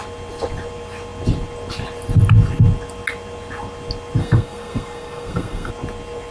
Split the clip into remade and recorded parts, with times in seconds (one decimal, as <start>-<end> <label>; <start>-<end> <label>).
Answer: 0.0-4.2 recorded; 4.2-5.7 remade; 5.7-6.3 recorded